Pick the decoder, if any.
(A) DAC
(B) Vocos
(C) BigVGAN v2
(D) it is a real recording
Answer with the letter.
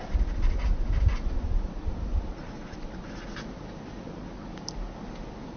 D